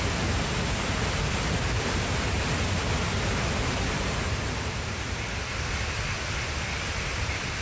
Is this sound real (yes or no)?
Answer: yes